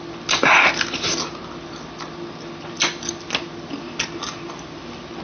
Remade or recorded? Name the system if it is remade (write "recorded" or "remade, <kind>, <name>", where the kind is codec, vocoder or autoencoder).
recorded